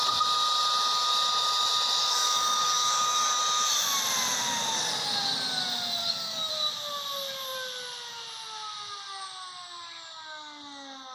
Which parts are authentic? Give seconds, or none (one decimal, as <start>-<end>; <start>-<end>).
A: 0.0-2.0; 3.4-6.0; 6.5-11.1